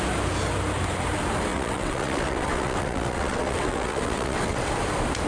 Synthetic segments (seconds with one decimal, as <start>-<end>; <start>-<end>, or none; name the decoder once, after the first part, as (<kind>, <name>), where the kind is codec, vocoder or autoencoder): 1.5-4.7 (vocoder, WaveNeXt)